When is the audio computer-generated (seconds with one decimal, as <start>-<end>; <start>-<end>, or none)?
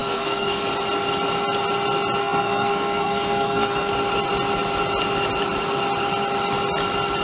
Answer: 0.0-0.6; 2.2-3.9